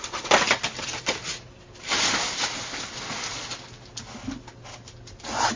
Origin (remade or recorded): recorded